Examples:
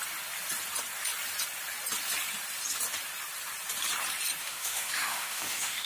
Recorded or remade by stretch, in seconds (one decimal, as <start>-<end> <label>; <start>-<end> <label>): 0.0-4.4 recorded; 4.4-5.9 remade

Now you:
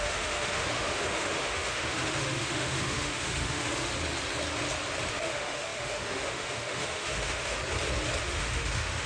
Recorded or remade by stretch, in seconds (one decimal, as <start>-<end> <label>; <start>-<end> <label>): 0.0-3.9 remade; 3.9-5.1 recorded; 5.1-7.6 remade; 7.6-8.2 recorded; 8.2-9.1 remade

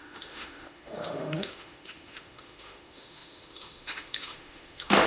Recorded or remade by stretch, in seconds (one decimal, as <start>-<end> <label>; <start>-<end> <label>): 0.0-5.1 remade